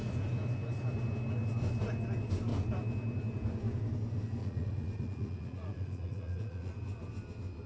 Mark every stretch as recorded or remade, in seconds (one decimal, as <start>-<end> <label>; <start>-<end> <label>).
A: 0.0-4.4 recorded; 4.4-6.7 remade; 6.7-7.7 recorded